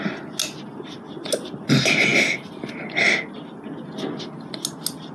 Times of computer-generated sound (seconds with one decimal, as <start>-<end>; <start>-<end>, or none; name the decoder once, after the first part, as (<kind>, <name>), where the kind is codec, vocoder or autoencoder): none